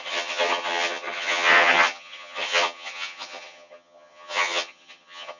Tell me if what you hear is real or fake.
fake